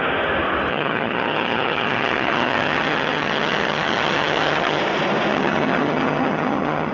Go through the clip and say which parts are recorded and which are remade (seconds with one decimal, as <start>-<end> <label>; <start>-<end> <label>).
0.0-0.7 recorded; 0.7-4.8 remade; 4.8-5.3 recorded; 5.3-6.9 remade